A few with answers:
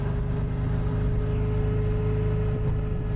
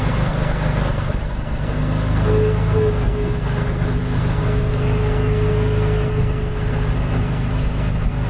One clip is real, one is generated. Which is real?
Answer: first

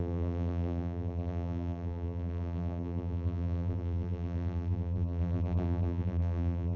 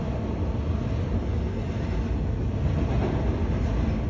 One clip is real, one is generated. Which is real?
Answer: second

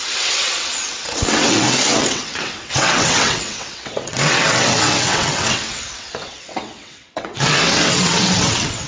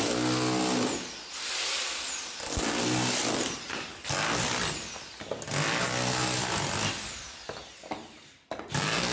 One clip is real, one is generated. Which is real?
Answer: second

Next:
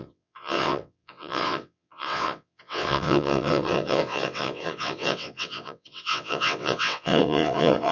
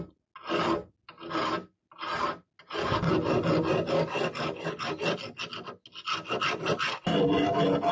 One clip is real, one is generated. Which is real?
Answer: second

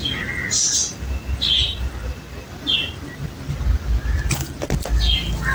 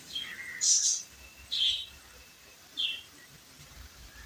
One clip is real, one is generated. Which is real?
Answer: first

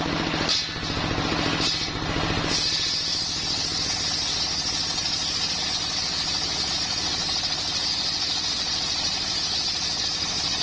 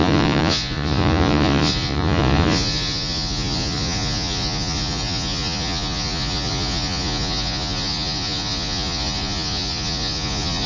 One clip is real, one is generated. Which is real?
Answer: first